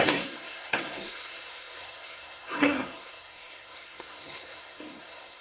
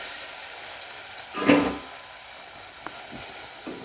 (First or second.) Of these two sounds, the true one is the second